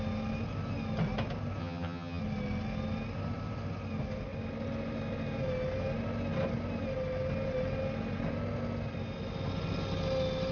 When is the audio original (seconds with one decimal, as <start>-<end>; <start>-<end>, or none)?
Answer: 0.0-1.6; 2.2-10.5